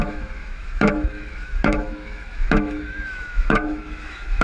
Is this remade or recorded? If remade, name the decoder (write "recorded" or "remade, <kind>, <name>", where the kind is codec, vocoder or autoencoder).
remade, autoencoder, DAC-VAE